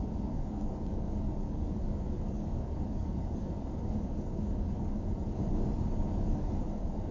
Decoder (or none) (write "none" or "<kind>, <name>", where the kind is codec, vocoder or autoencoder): codec, DAC